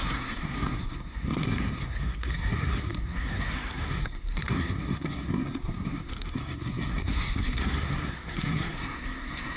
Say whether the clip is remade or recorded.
remade